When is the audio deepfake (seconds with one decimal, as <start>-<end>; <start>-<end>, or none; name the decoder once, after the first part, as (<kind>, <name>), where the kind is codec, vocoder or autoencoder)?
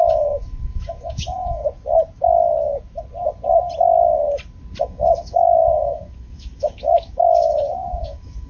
0.0-1.6 (autoencoder, DAC-VAE); 4.8-8.5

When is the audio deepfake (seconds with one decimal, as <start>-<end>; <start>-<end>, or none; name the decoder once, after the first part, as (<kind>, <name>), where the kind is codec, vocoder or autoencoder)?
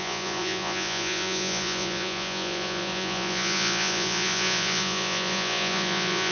0.0-6.3 (vocoder, Vocos)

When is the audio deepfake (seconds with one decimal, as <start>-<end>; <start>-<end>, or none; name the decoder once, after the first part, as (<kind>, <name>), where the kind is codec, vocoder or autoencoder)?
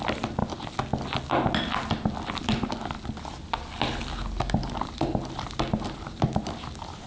0.0-0.4 (vocoder, BigVGAN v2); 4.7-7.1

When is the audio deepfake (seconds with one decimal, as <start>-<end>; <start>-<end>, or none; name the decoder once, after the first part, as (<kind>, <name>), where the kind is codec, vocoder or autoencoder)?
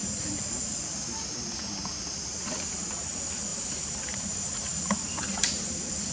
3.5-6.1 (vocoder, BigVGAN v2)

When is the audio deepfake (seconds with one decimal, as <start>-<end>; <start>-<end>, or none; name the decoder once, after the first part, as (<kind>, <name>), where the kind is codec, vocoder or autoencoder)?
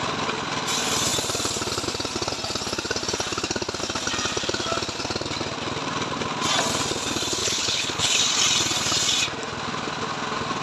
7.4-8.2 (codec, HILCodec)